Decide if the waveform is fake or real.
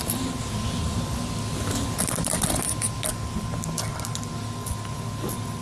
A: fake